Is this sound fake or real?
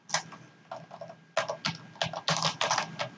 real